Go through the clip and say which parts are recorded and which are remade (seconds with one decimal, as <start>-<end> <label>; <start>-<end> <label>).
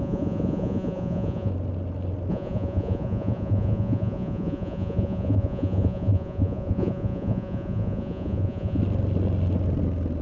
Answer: 0.0-1.5 remade; 1.5-2.3 recorded; 2.3-8.8 remade; 8.8-10.2 recorded